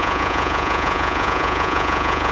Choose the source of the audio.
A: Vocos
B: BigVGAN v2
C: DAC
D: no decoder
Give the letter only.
A